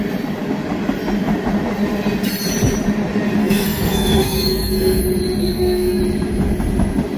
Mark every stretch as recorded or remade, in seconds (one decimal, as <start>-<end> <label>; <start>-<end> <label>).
0.0-3.4 recorded; 3.4-5.0 remade; 5.0-5.4 recorded; 5.4-6.0 remade; 6.0-7.2 recorded